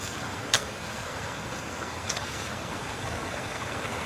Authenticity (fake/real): fake